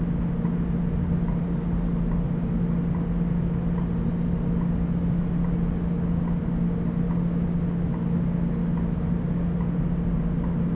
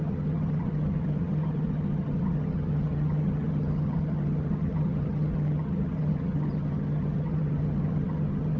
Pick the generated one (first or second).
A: second